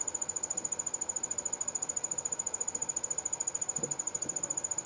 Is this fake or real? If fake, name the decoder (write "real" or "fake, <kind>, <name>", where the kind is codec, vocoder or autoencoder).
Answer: real